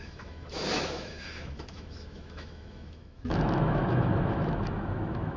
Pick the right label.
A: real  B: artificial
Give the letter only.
B